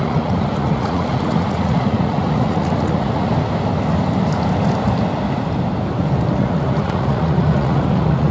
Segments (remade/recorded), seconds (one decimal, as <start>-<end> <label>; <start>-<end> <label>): 0.0-3.3 remade; 3.3-6.4 recorded; 6.4-8.3 remade